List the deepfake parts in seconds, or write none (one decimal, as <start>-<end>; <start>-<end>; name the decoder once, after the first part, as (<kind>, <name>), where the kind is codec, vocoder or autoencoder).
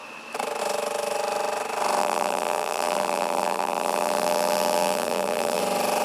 2.0-5.6 (vocoder, BigVGAN v2)